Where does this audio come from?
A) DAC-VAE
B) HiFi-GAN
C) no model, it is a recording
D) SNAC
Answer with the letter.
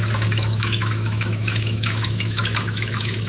A